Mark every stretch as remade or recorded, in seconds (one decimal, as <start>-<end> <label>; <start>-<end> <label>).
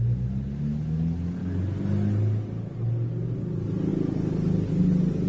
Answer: 0.0-5.3 recorded